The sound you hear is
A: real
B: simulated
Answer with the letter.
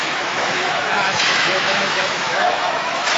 B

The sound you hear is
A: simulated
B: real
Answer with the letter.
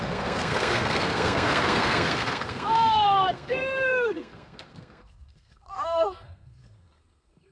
A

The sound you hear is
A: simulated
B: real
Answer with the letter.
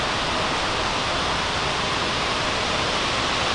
B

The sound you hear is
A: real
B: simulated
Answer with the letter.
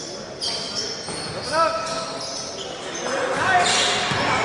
A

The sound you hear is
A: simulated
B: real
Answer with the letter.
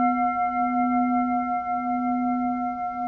B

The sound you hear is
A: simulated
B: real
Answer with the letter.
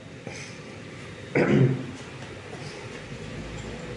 B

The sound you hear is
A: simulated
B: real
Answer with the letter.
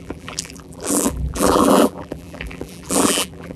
A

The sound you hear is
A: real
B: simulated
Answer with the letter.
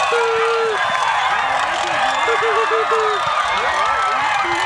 A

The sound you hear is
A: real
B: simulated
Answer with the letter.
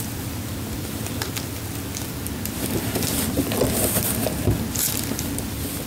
A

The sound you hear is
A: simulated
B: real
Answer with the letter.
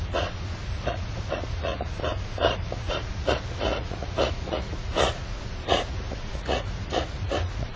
A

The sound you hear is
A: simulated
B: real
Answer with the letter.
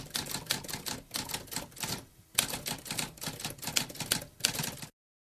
B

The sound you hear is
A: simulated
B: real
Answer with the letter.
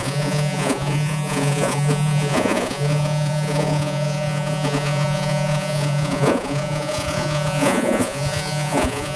A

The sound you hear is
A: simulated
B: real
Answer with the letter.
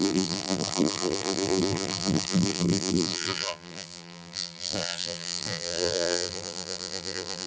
A